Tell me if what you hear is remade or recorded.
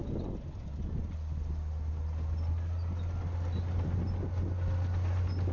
recorded